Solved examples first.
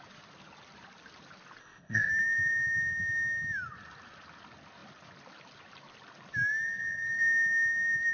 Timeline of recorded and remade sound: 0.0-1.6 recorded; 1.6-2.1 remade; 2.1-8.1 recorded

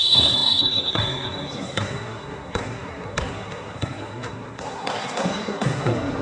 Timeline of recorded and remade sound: 0.0-6.2 remade

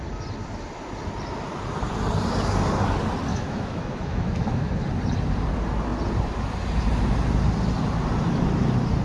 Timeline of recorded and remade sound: 0.0-3.3 recorded; 3.3-4.7 remade; 4.7-9.0 recorded